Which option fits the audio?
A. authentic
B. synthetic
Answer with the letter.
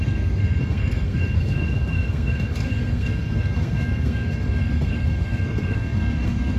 B